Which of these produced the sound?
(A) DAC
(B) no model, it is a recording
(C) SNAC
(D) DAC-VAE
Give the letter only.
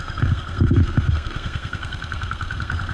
C